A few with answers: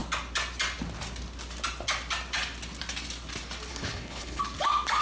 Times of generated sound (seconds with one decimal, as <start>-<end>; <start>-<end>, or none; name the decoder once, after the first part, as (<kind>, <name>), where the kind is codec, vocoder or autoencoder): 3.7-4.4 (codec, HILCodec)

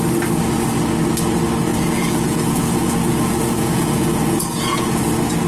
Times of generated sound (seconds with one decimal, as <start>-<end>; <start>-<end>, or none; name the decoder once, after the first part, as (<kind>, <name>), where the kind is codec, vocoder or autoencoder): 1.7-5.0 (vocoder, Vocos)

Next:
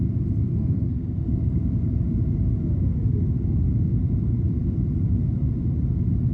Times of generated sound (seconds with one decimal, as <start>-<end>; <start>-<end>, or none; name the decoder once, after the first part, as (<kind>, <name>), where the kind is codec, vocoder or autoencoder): 0.5-1.4 (codec, SNAC)

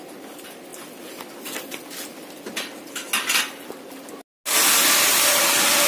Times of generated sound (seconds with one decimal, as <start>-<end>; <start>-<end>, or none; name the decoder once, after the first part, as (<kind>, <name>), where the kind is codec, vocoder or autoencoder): none

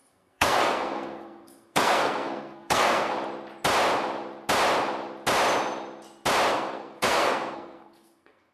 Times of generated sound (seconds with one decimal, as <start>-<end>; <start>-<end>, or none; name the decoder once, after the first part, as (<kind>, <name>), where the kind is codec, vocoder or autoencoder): 0.0-3.1 (codec, SNAC); 6.5-8.5